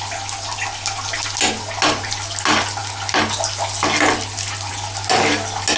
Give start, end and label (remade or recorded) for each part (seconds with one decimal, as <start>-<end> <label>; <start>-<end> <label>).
0.0-5.8 recorded

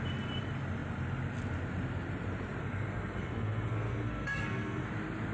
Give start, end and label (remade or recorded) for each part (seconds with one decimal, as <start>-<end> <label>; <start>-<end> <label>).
0.0-2.6 recorded; 2.6-4.8 remade; 4.8-5.3 recorded

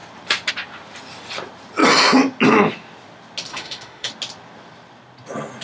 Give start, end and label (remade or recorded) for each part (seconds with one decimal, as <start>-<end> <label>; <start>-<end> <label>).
0.0-3.5 recorded; 3.5-4.1 remade; 4.1-5.6 recorded

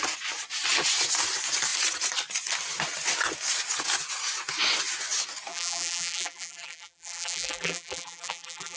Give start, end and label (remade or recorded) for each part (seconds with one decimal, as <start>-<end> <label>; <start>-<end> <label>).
0.0-5.5 recorded; 5.5-8.8 remade

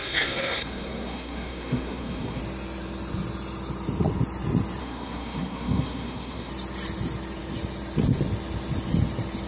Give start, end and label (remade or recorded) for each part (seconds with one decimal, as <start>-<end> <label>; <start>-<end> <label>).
0.0-2.4 remade; 2.4-4.8 recorded; 4.8-6.5 remade; 6.5-9.5 recorded